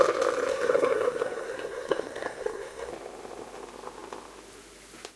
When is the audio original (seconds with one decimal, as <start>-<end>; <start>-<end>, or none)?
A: 0.0-0.5; 2.9-5.2